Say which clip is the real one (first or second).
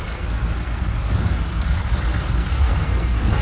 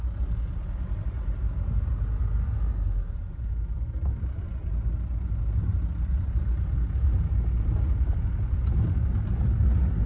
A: second